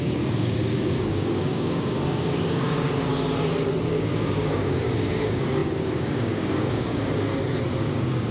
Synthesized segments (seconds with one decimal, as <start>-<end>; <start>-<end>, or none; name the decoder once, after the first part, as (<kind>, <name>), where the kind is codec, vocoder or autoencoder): 0.0-3.1 (codec, DAC); 3.8-7.3; 7.9-8.3